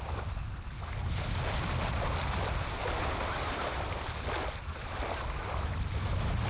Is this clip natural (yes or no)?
yes